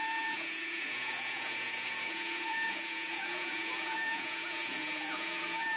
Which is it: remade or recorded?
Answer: remade